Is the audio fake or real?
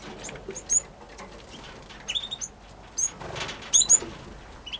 real